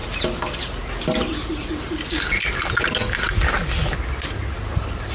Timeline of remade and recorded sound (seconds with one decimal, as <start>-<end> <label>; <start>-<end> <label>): 0.0-5.1 recorded